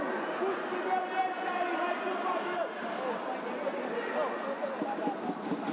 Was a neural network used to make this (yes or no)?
no